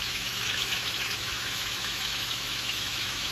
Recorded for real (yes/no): no